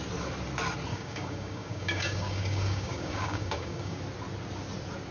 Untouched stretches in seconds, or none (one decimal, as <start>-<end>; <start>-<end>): 0.0-0.9; 4.0-5.1

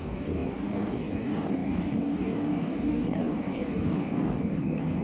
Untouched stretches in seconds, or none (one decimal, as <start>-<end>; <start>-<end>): none

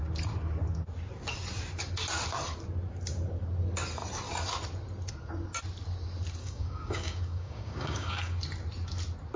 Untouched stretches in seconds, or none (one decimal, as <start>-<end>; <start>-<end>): 0.0-6.4; 8.4-9.4